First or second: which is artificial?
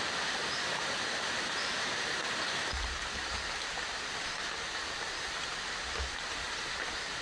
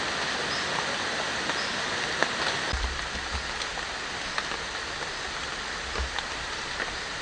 first